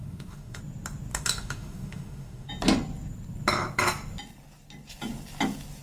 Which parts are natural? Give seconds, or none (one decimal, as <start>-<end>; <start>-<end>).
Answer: 0.6-1.1; 2.5-5.8